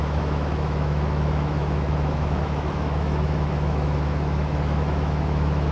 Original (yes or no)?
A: no